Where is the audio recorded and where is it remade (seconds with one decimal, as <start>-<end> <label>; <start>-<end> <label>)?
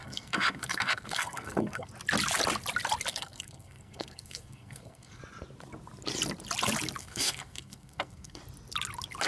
0.0-1.9 remade; 1.9-3.1 recorded; 3.1-5.2 remade; 5.2-7.0 recorded; 7.0-8.4 remade; 8.4-9.3 recorded